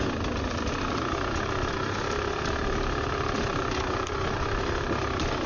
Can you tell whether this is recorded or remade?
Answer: recorded